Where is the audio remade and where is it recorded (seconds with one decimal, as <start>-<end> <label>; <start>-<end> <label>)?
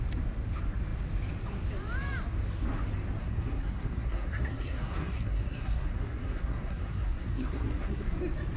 0.0-3.2 recorded; 3.2-8.2 remade; 8.2-8.6 recorded